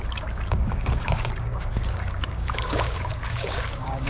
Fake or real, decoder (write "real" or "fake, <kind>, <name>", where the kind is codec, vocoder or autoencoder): fake, codec, DAC